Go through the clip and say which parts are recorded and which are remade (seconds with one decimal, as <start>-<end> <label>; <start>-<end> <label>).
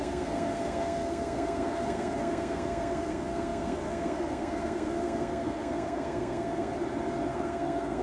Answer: 0.0-6.7 remade; 6.7-7.3 recorded; 7.3-8.0 remade